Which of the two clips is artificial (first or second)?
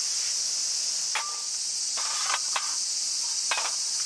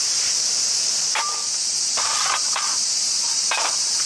second